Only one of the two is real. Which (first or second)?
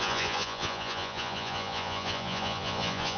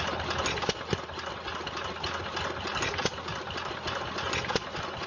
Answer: second